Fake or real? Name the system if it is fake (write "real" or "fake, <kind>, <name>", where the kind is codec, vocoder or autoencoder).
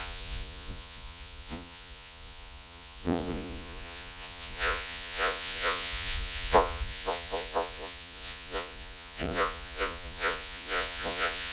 fake, vocoder, Vocos